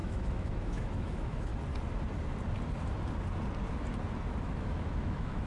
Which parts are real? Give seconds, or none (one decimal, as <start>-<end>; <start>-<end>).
1.5-4.4